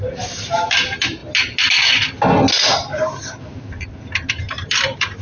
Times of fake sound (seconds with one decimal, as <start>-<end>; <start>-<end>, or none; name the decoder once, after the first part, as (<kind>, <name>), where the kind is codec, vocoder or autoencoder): 0.0-1.2 (vocoder, BigVGAN v2); 4.3-5.2